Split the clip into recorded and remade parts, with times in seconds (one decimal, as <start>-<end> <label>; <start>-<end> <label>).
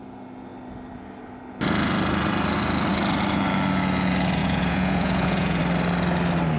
0.0-4.4 recorded; 4.4-5.6 remade; 5.6-6.6 recorded